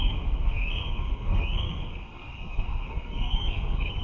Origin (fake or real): fake